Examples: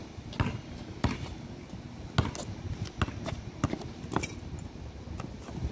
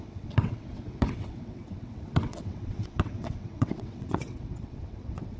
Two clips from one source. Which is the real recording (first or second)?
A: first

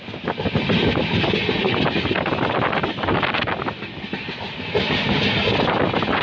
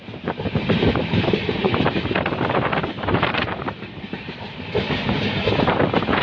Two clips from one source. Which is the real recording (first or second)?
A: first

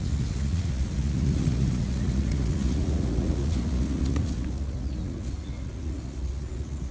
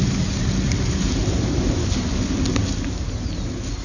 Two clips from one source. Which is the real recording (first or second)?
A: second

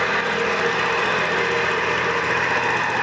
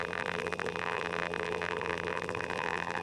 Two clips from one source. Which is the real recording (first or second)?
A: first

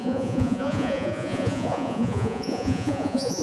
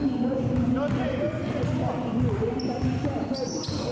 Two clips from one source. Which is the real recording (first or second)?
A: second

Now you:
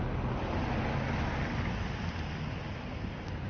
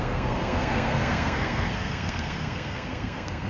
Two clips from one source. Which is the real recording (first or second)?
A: first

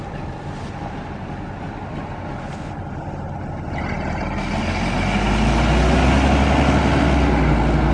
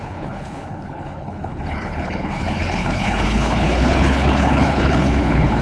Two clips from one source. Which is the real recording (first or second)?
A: first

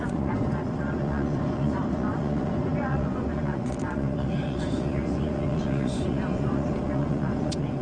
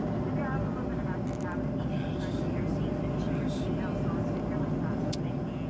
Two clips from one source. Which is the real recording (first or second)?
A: second